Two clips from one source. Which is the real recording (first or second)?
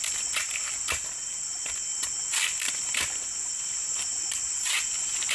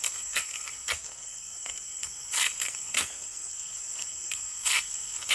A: first